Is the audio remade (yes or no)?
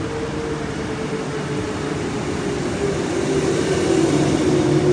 no